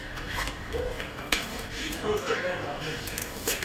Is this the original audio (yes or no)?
no